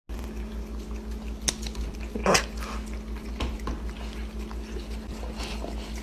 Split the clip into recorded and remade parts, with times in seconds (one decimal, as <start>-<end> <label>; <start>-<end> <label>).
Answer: 0.0-6.0 recorded

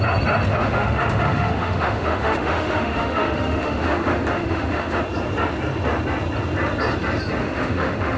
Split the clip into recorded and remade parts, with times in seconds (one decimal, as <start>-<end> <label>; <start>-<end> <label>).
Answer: 0.0-0.5 recorded; 0.5-5.0 remade; 5.0-7.4 recorded; 7.4-8.2 remade

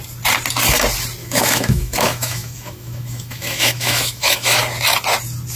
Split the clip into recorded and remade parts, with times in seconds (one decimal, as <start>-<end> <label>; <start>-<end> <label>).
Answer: 0.0-1.2 recorded; 1.2-4.6 remade; 4.6-5.6 recorded

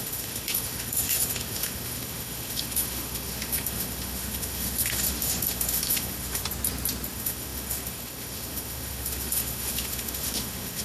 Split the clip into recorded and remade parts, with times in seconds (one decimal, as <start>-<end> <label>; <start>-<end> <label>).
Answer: 0.0-6.4 remade; 6.4-7.1 recorded; 7.1-10.8 remade

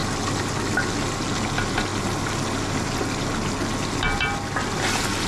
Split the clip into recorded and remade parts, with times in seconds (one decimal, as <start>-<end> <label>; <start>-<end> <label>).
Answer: 0.0-5.3 recorded

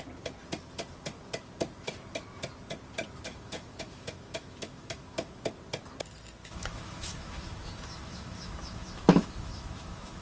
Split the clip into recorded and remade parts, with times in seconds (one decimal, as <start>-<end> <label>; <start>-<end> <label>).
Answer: 0.0-3.3 recorded; 3.3-5.5 remade; 5.5-6.4 recorded; 6.4-10.2 remade

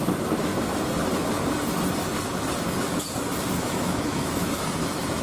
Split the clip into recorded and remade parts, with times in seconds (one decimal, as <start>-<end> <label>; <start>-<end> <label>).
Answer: 0.0-0.5 remade; 0.5-3.6 recorded; 3.6-5.2 remade

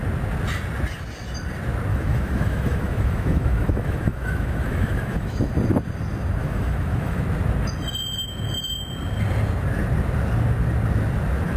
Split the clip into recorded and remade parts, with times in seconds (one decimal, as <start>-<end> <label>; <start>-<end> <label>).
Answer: 0.0-1.9 recorded; 1.9-5.5 remade; 5.5-6.4 recorded; 6.4-7.2 remade; 7.2-11.6 recorded